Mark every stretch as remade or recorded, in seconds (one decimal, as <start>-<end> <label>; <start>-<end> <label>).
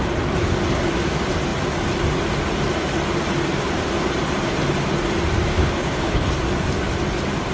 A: 0.0-5.5 recorded; 5.5-6.3 remade; 6.3-7.5 recorded